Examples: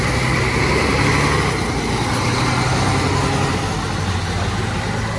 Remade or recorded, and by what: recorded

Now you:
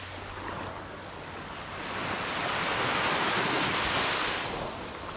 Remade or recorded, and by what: recorded